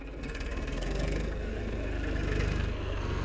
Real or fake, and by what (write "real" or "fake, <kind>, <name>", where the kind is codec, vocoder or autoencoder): fake, codec, SNAC